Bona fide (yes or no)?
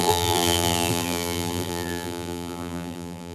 no